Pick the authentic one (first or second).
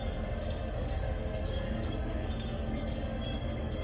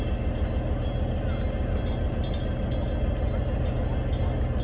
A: second